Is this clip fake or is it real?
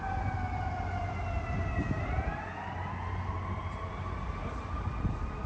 real